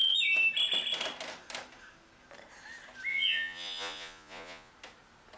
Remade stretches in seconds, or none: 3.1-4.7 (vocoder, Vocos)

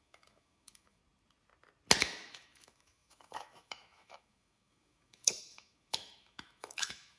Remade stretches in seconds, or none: 0.0-1.0 (autoencoder, DAC-VAE); 2.0-7.2